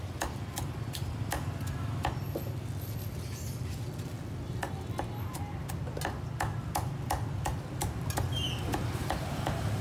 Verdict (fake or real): real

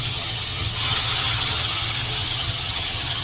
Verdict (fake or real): fake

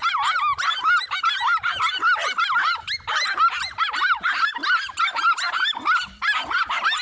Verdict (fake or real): real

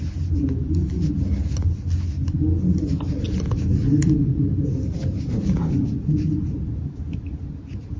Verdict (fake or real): real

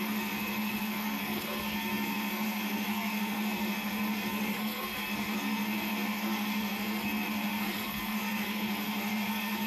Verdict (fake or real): fake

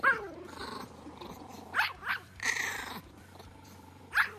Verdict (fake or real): fake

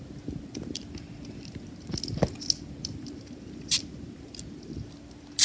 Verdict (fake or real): real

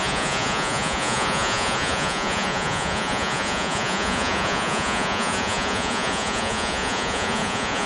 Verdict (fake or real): fake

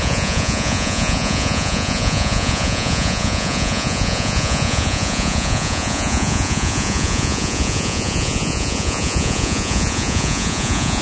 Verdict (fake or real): fake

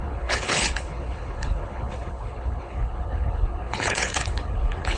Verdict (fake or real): fake